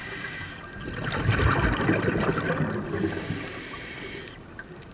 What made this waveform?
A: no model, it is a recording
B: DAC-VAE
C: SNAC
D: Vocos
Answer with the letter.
A